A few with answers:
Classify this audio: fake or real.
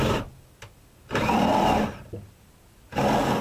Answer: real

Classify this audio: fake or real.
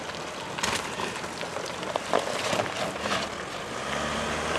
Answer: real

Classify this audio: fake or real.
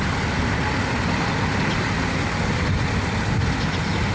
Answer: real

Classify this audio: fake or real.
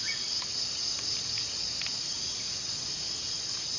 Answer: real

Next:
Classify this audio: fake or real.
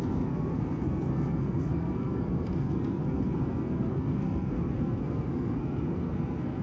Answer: fake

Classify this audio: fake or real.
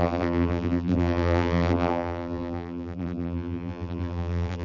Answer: fake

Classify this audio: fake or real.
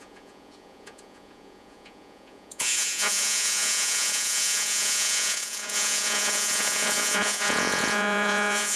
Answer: fake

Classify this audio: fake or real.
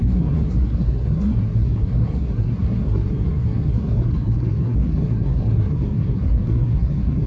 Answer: fake